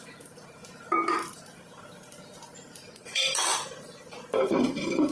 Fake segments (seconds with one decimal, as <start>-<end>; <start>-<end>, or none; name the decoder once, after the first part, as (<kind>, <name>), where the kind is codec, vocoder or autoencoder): 0.0-0.6 (vocoder, BigVGAN v2); 1.1-5.1